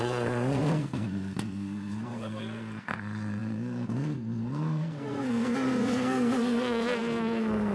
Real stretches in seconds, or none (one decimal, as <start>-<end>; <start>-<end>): none